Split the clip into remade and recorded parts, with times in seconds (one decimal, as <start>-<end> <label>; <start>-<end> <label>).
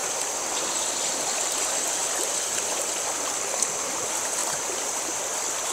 0.0-4.4 recorded; 4.4-5.2 remade; 5.2-5.7 recorded